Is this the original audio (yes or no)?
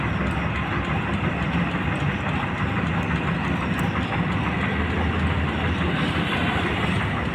yes